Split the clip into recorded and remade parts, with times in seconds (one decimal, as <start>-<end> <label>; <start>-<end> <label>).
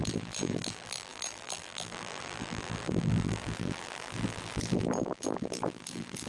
0.0-6.3 remade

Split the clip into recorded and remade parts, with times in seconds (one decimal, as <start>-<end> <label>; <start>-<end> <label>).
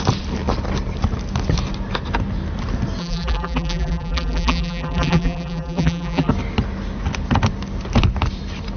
0.0-3.0 recorded; 3.0-6.3 remade; 6.3-8.8 recorded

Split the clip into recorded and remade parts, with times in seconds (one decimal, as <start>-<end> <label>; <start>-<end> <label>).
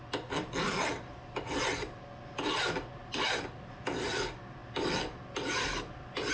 0.0-6.3 recorded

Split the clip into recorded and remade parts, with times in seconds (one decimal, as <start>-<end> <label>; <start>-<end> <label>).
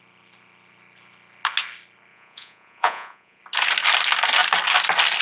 0.0-2.1 recorded; 2.1-3.4 remade; 3.4-5.2 recorded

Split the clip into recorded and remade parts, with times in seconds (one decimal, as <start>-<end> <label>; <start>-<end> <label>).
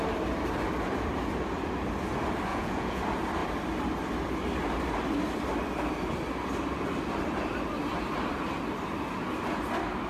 0.0-2.5 recorded; 2.5-3.0 remade; 3.0-10.1 recorded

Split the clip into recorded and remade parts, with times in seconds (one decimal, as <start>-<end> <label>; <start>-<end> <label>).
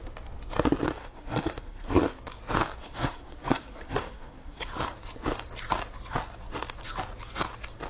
0.0-1.0 recorded; 1.0-2.0 remade; 2.0-2.8 recorded; 2.8-4.7 remade; 4.7-7.9 recorded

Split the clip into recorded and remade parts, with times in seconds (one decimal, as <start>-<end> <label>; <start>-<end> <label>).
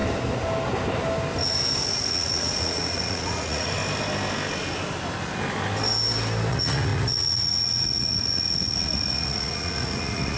0.0-1.9 recorded; 1.9-3.8 remade; 3.8-6.5 recorded; 6.5-10.4 remade